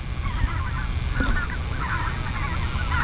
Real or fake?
real